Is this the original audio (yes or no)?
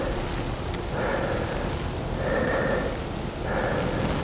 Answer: yes